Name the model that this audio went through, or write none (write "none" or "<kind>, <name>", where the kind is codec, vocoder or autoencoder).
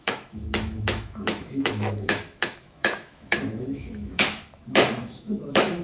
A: autoencoder, DAC-VAE